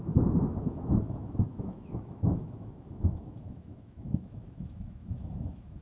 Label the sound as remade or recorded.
remade